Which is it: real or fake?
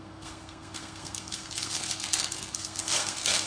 fake